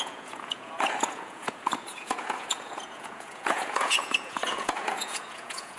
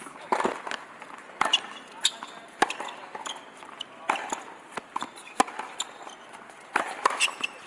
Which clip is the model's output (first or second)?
first